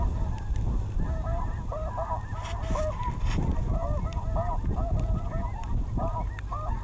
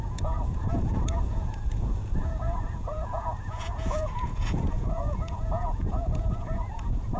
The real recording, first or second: first